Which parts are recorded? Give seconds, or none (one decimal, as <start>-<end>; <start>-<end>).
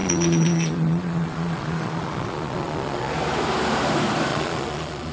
3.1-4.3